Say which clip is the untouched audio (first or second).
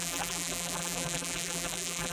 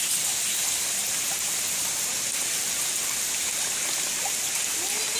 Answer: second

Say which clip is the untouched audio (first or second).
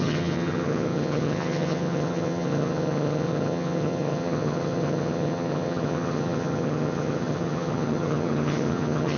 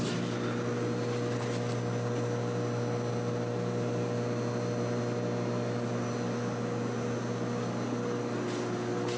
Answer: second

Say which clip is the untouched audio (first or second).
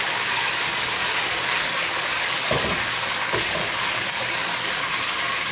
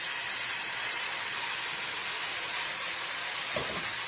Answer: second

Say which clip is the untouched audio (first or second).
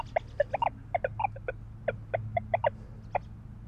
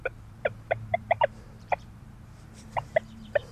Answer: first